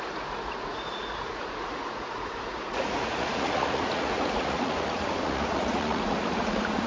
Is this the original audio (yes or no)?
no